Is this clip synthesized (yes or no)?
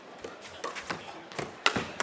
no